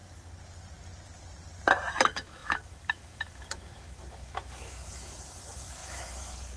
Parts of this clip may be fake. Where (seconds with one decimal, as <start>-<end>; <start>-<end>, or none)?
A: 1.9-6.6